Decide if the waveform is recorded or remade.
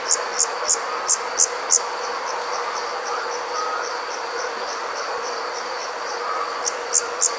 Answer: recorded